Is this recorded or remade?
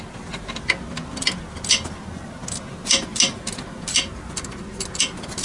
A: recorded